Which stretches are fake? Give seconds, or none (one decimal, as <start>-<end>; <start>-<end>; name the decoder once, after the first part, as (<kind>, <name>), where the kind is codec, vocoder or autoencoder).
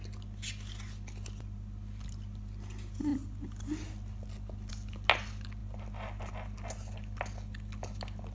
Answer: none